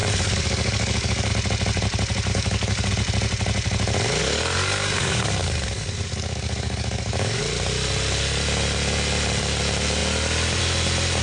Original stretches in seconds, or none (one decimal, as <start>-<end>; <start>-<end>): 1.3-2.3; 2.9-4.2; 7.4-11.2